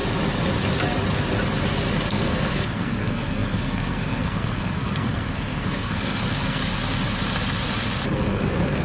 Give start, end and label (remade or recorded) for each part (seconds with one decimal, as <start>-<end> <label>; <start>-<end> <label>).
0.0-2.1 recorded; 2.1-6.6 remade; 6.6-8.1 recorded; 8.1-8.8 remade

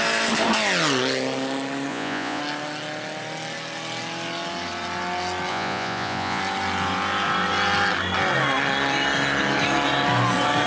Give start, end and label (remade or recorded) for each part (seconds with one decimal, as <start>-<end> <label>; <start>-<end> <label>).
0.0-1.9 recorded; 1.9-2.4 remade; 2.4-5.5 recorded; 5.5-6.4 remade; 6.4-10.7 recorded

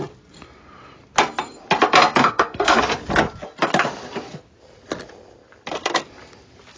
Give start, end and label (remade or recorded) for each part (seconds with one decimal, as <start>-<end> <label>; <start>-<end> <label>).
0.0-2.2 recorded; 2.2-2.8 remade; 2.8-6.8 recorded

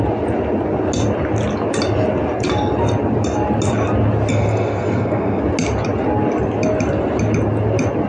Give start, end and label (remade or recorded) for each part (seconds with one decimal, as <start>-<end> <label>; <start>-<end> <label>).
0.0-4.3 recorded; 4.3-5.4 remade; 5.4-8.1 recorded

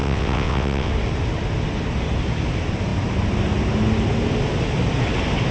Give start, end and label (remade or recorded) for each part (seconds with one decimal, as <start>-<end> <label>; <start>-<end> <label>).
0.0-0.9 remade; 0.9-5.5 recorded

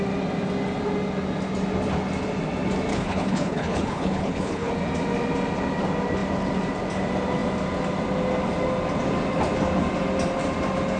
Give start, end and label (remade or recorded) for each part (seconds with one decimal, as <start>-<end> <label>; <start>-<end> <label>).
0.0-2.9 recorded; 2.9-4.7 remade; 4.7-11.0 recorded

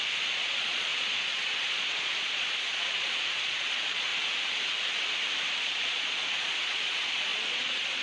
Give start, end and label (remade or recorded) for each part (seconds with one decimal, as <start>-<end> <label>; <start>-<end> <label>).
0.0-4.1 remade; 4.1-5.5 recorded; 5.5-8.0 remade